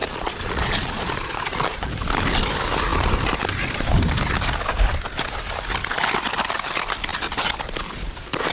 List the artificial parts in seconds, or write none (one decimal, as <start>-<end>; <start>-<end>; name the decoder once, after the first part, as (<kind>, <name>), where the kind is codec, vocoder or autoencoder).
0.0-1.9 (vocoder, Vocos)